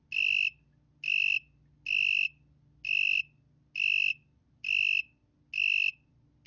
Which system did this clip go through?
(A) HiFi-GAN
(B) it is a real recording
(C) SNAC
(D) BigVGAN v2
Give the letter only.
B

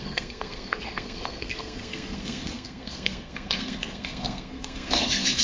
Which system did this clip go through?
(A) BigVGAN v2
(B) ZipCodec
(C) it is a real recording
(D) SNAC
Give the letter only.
D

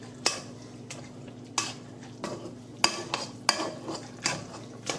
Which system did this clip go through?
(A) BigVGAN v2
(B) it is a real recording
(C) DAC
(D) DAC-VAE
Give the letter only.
B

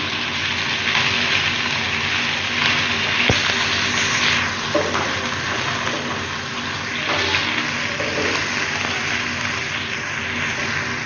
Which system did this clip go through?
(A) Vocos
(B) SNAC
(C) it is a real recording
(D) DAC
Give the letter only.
C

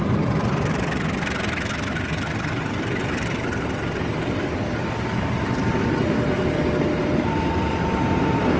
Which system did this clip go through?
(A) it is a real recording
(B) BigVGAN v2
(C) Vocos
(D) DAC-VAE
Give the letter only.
B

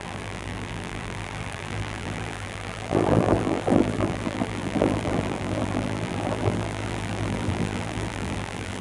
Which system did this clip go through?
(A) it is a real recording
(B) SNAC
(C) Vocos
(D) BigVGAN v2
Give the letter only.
D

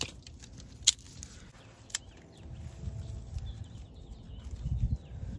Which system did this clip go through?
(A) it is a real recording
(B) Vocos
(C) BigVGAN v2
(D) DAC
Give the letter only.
A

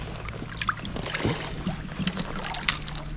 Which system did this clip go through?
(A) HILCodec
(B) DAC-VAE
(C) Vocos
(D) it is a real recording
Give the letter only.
D